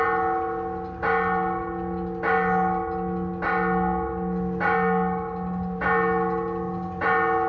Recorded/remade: recorded